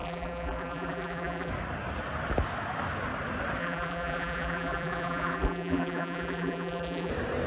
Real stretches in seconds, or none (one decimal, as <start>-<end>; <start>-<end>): 1.5-3.6; 7.1-7.5